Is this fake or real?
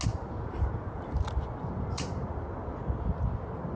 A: real